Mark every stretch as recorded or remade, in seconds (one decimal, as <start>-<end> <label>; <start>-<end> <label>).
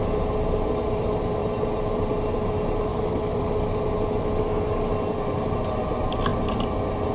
0.0-2.9 recorded; 2.9-3.4 remade; 3.4-7.1 recorded